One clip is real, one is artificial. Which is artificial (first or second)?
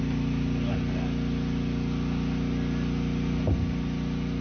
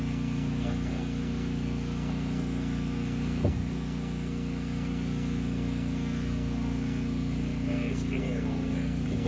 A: second